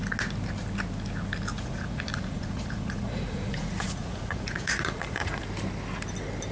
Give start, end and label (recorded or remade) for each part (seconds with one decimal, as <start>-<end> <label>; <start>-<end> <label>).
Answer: 0.0-1.5 recorded; 1.5-5.4 remade; 5.4-6.5 recorded